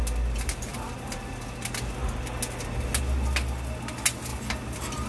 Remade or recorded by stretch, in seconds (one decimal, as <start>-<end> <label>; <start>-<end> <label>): 0.0-0.7 recorded; 0.7-1.5 remade; 1.5-4.3 recorded; 4.3-5.1 remade